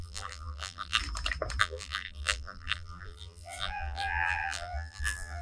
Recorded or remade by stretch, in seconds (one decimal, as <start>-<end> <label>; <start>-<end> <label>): 0.0-1.0 remade; 1.0-1.6 recorded; 1.6-5.4 remade